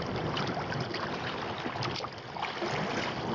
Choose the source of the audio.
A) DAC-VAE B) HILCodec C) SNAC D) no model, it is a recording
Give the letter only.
D